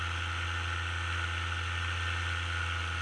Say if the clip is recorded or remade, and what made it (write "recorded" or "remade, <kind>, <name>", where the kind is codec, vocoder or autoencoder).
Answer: recorded